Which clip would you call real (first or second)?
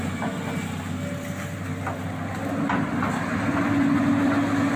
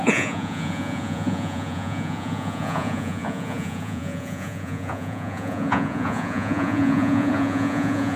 first